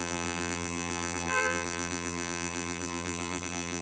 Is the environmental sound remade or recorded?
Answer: remade